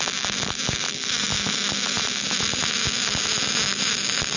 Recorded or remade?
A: recorded